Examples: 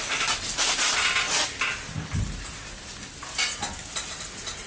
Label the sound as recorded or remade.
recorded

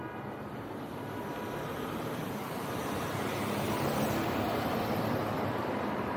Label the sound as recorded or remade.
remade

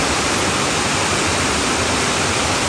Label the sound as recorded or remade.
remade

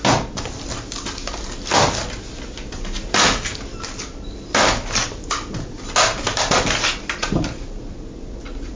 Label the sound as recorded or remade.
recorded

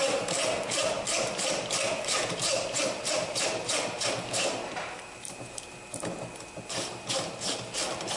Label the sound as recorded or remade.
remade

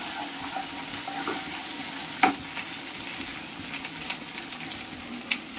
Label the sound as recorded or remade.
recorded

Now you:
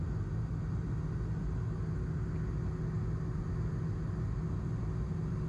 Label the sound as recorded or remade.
recorded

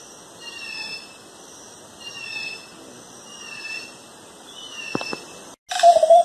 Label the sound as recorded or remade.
recorded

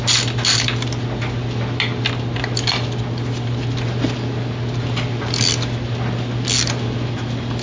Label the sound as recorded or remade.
recorded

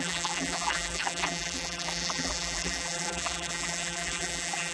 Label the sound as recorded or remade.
remade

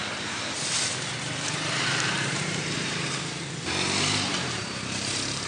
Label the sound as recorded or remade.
remade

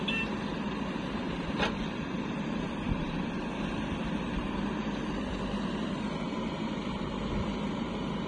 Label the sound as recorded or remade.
remade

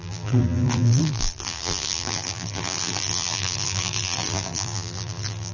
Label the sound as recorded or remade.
remade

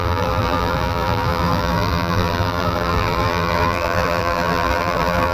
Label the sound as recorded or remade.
remade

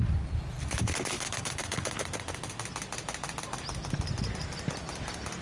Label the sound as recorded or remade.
recorded